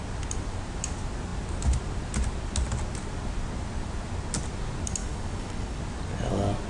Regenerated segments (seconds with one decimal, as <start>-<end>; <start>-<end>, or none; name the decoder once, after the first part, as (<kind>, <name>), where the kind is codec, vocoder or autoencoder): 5.0-5.8 (codec, DAC)